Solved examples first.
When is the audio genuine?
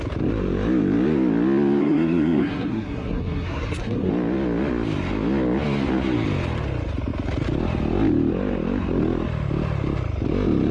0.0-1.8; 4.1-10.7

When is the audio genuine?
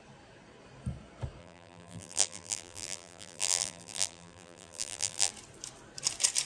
0.0-1.4; 5.3-6.5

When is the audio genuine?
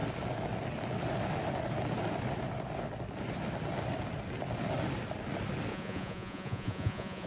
0.0-5.7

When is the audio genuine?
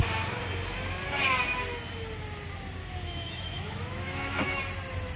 0.0-2.8; 4.6-5.2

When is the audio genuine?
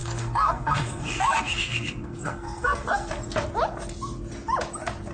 3.1-5.1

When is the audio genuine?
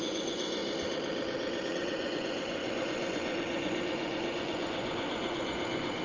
0.6-1.7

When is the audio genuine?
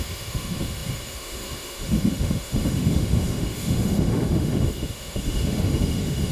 none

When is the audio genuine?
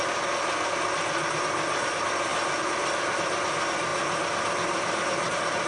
0.0-5.7